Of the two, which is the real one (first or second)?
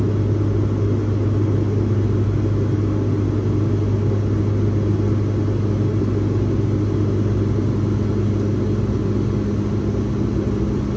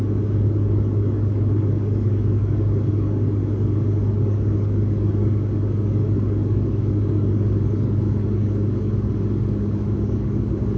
first